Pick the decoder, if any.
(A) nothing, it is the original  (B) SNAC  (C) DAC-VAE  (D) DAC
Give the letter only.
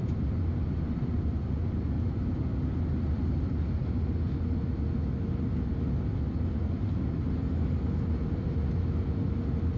A